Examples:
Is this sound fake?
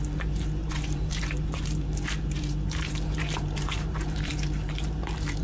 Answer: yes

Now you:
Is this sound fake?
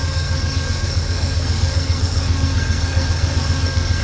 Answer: yes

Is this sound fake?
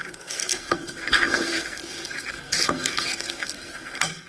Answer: yes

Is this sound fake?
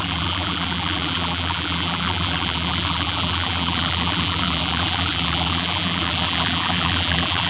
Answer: yes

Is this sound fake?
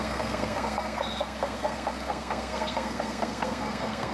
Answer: yes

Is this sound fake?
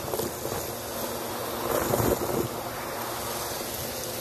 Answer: no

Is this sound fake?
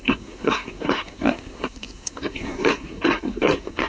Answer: yes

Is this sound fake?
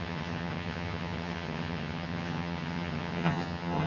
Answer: yes